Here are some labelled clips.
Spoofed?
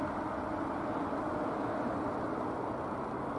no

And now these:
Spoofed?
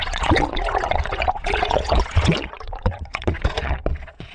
yes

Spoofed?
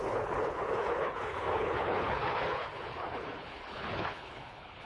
yes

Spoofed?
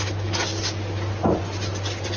no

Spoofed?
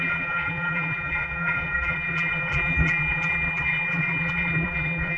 yes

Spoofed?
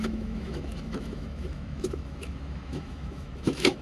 yes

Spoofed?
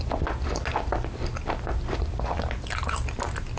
no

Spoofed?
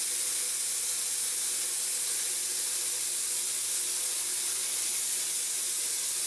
no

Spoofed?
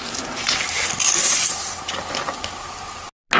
no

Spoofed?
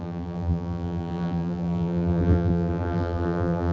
yes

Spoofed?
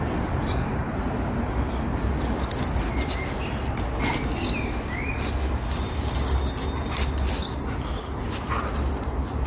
no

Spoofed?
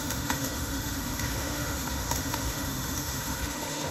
yes